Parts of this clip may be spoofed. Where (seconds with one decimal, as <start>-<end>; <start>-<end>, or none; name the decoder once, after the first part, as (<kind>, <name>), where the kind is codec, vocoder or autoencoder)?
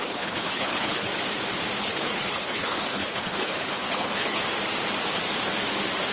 0.0-1.1 (codec, HILCodec); 1.8-4.4